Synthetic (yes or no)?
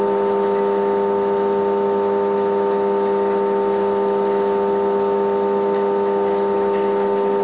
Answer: no